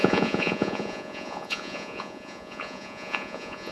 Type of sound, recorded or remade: remade